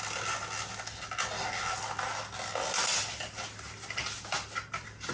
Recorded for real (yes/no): yes